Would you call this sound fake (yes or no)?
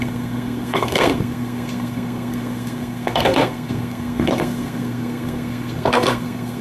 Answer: yes